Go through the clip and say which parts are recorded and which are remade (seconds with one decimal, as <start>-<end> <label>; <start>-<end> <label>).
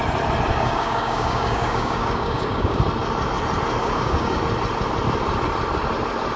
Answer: 0.0-0.5 recorded; 0.5-2.8 remade; 2.8-3.8 recorded; 3.8-4.4 remade; 4.4-6.4 recorded